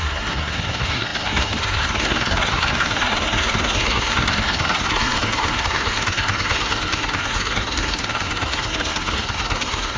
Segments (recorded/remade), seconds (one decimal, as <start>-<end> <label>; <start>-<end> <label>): 0.0-10.0 remade